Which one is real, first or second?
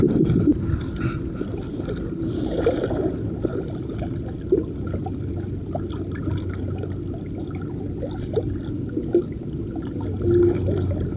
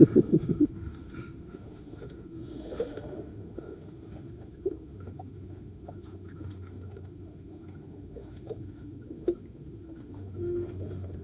first